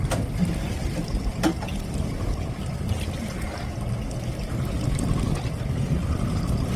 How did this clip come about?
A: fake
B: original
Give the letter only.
B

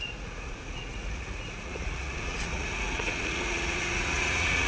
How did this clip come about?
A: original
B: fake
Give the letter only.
B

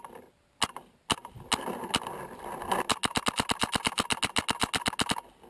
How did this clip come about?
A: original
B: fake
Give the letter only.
A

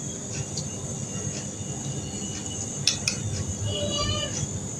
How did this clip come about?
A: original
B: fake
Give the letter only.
A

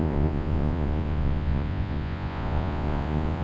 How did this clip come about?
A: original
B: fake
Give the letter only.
B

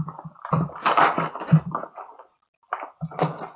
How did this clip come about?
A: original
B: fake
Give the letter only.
A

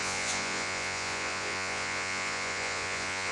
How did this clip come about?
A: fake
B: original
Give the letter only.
A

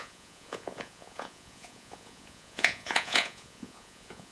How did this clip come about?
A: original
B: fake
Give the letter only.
B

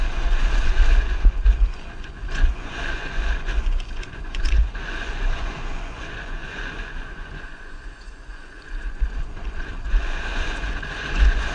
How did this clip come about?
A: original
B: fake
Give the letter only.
B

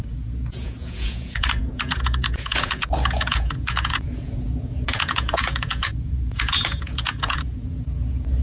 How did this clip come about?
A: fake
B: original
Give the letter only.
A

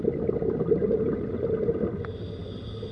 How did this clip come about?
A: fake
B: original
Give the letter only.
B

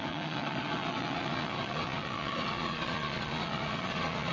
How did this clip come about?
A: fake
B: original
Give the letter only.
A